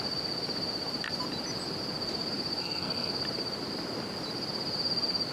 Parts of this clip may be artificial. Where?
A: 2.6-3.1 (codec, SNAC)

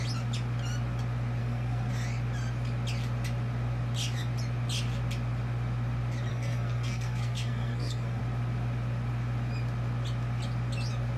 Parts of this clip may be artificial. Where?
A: 1.4-1.9 (codec, SNAC); 6.3-8.2

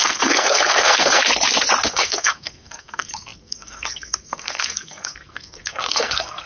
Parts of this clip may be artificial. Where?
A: 0.0-1.2 (codec, SNAC); 1.9-6.5

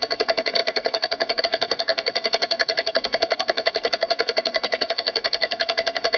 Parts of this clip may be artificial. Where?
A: 0.0-6.2 (codec, SNAC)

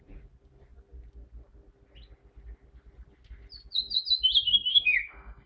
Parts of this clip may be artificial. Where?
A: 4.7-5.5 (codec, SNAC)